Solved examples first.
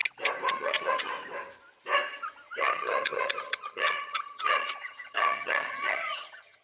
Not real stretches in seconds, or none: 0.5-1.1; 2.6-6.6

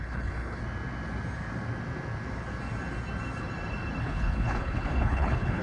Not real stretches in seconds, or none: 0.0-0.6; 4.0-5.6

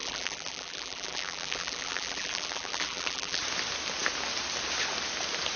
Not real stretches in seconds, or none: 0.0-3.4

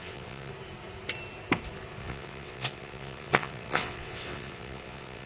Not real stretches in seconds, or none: 0.0-0.5; 2.0-5.3

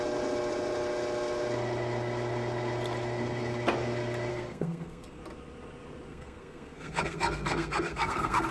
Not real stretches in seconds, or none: 4.3-5.2; 6.1-8.5

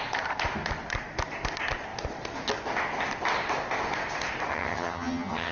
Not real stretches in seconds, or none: 4.5-5.5

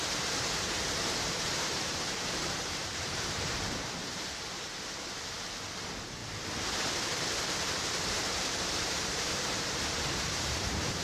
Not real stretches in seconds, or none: 0.0-6.2; 6.8-11.0

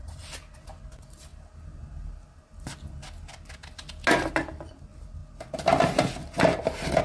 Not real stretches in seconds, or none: 0.0-1.3; 4.3-5.2